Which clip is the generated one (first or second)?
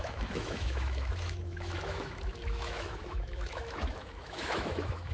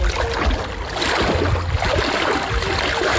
first